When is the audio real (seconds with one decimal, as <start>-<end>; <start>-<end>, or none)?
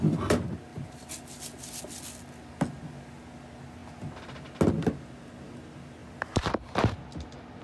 0.0-6.0; 7.0-7.6